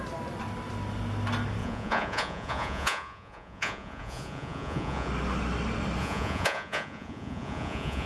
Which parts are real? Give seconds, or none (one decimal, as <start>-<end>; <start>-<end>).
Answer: 0.0-1.6; 5.1-6.0